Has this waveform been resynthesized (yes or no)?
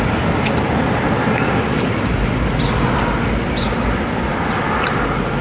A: no